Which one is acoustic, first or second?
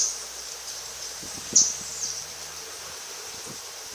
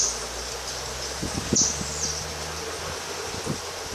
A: second